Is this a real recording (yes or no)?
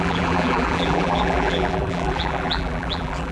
no